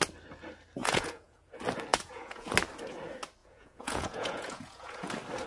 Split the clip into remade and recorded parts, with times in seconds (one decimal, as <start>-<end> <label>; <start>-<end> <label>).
0.0-0.8 recorded; 0.8-1.5 remade; 1.5-1.9 recorded; 1.9-2.5 remade; 2.5-3.4 recorded; 3.4-5.1 remade; 5.1-5.5 recorded